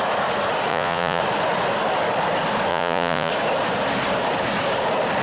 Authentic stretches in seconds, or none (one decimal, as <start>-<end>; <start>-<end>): 0.0-0.7; 1.2-2.7; 3.3-5.2